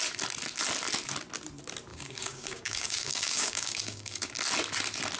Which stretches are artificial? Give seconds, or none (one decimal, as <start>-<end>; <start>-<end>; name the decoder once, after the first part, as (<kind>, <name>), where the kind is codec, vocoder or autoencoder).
1.9-4.3 (codec, DAC)